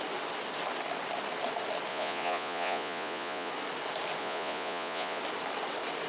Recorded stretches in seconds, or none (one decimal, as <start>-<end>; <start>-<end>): 0.0-1.9; 3.5-4.2; 5.2-6.1